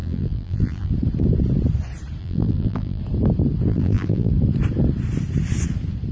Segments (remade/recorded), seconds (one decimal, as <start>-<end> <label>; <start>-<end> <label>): 0.0-0.9 remade; 0.9-2.2 recorded; 2.2-3.0 remade; 3.0-3.7 recorded; 3.7-4.3 remade; 4.3-6.1 recorded